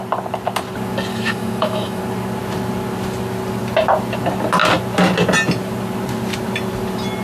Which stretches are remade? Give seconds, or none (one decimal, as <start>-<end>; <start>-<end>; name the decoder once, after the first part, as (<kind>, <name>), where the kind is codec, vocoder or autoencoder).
1.1-2.0 (autoencoder, DAC-VAE)